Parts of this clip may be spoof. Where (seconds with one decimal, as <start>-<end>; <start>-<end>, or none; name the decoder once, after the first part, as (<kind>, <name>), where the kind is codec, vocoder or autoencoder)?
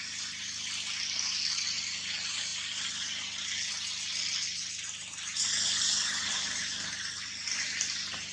none